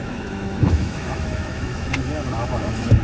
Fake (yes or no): yes